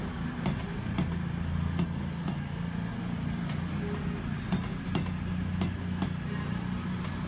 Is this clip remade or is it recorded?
recorded